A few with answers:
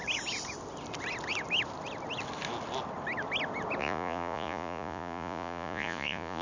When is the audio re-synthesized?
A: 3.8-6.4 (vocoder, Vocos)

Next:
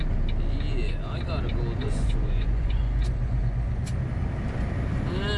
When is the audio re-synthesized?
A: 1.8-3.9 (vocoder, Vocos)

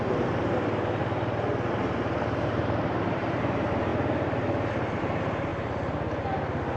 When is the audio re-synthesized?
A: 0.0-1.0 (vocoder, BigVGAN v2); 1.7-3.9; 5.0-5.5

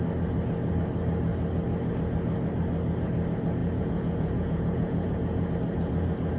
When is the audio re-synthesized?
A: 3.6-5.5 (vocoder, Vocos)